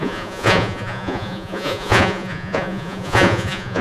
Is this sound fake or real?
fake